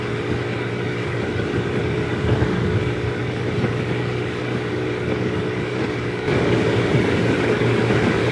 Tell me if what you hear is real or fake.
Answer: fake